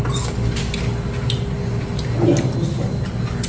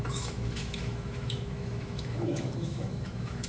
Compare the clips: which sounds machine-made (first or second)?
second